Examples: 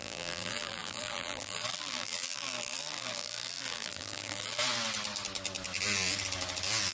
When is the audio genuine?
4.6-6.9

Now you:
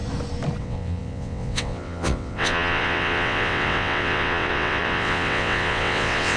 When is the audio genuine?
0.0-0.6

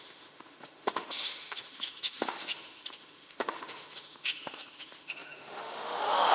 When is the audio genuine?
none

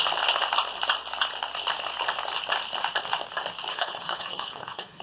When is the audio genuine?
0.0-3.7

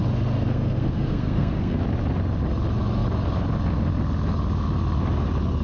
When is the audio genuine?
0.0-0.5; 1.8-5.6

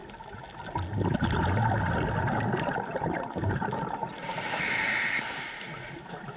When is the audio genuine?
0.0-2.6

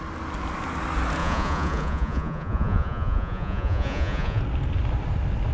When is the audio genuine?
0.0-1.2; 4.4-5.5